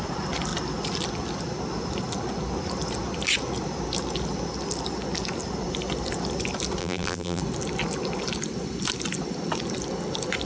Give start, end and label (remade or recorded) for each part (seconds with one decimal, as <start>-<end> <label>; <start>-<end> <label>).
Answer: 0.0-6.8 recorded; 6.8-7.4 remade; 7.4-10.4 recorded